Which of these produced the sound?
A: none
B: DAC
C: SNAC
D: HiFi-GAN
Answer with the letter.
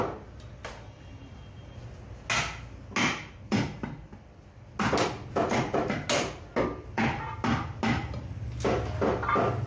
A